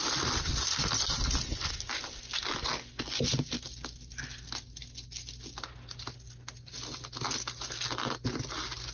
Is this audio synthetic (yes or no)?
no